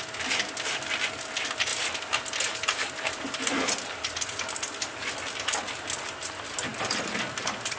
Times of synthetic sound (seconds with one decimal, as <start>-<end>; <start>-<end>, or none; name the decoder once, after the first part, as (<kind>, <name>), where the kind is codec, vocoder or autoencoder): none